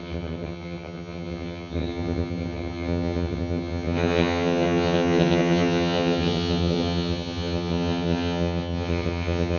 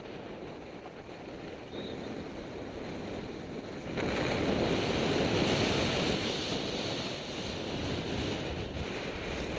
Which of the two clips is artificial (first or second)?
first